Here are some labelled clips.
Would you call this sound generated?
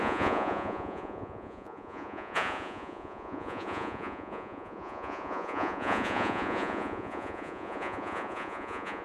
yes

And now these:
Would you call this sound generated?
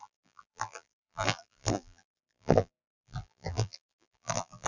yes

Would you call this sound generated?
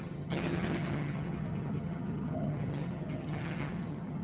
yes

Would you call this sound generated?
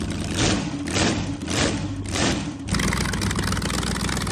no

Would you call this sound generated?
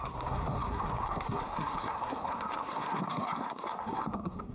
yes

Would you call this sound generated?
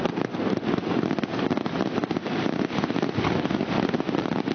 no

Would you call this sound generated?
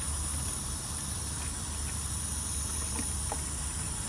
no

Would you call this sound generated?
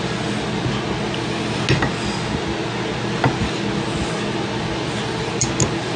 no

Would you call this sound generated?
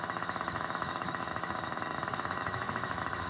yes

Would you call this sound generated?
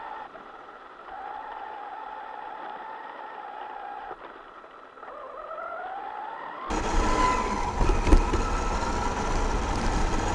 no